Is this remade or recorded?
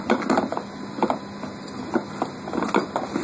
recorded